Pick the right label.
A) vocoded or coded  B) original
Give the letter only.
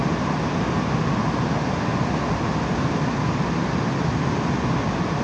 B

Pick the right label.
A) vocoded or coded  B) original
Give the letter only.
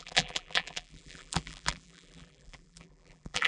A